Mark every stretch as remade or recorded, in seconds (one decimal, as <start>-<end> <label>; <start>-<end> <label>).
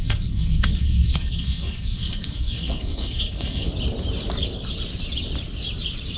0.0-3.7 remade; 3.7-6.2 recorded